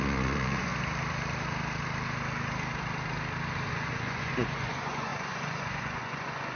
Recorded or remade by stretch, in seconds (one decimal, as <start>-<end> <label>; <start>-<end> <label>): 0.0-0.7 remade; 0.7-3.7 recorded; 3.7-6.6 remade